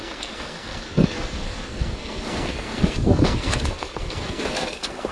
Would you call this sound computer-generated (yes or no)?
yes